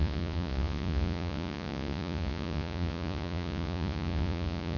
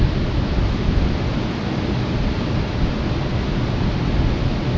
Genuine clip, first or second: second